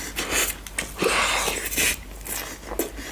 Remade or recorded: recorded